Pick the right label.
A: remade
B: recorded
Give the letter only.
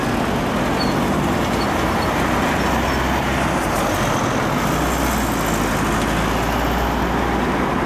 B